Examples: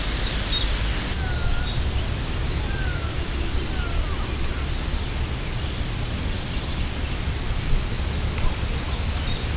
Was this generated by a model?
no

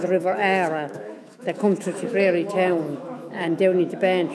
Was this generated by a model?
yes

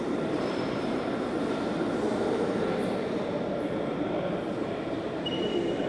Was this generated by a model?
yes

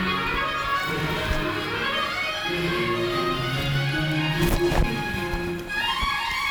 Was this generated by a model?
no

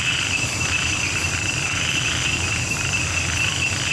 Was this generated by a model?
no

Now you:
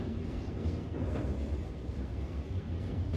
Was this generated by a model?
yes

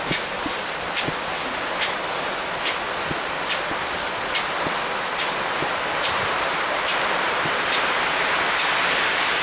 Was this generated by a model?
no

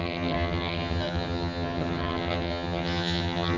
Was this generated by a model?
yes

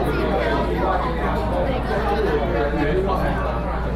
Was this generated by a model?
no